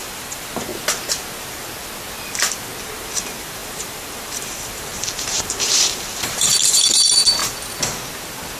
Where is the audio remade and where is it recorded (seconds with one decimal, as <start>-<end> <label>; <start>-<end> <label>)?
0.0-0.7 remade; 0.7-2.8 recorded; 2.8-7.4 remade; 7.4-8.6 recorded